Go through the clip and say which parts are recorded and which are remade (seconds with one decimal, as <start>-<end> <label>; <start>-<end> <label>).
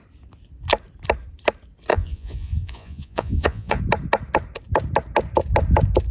0.0-1.9 recorded; 1.9-3.8 remade; 3.8-6.1 recorded